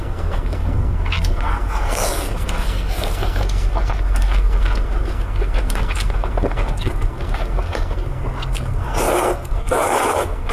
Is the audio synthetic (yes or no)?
yes